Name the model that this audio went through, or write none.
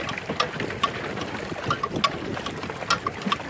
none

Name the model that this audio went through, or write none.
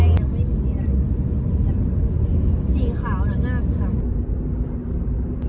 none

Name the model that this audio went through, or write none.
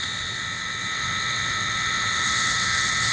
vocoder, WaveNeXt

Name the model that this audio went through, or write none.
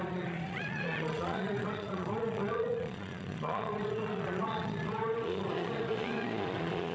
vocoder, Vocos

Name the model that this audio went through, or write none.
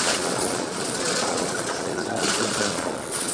vocoder, Vocos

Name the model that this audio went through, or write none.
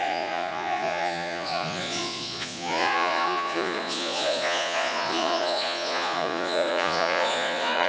vocoder, Vocos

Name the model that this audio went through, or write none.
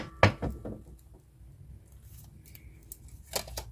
none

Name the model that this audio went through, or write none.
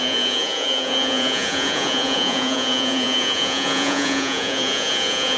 vocoder, Vocos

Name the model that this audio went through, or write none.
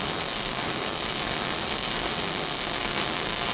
none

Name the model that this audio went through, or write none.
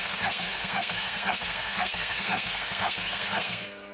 codec, SNAC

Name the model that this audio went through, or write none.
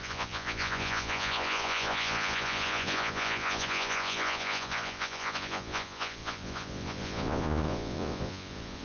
vocoder, Vocos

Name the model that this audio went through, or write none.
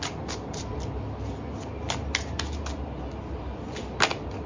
none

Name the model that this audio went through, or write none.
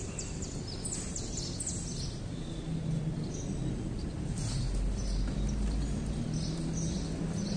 none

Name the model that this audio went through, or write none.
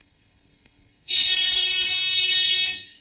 codec, SNAC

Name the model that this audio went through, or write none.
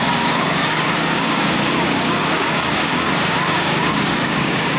codec, DAC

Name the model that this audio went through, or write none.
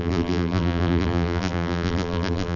vocoder, BigVGAN v2